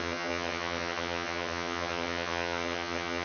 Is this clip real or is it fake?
fake